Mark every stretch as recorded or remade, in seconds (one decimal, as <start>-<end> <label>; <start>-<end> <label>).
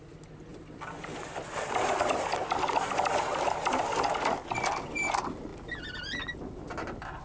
0.0-0.5 recorded; 0.5-3.8 remade; 3.8-5.5 recorded; 5.5-7.2 remade